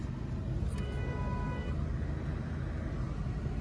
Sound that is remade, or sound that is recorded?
recorded